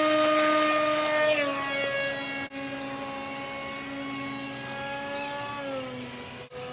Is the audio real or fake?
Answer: real